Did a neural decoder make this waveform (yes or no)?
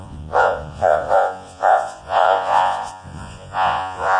yes